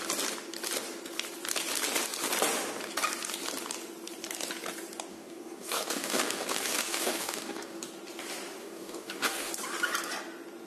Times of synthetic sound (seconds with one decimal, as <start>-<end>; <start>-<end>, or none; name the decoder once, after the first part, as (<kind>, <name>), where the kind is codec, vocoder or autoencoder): 5.1-7.9 (codec, DAC); 8.6-9.5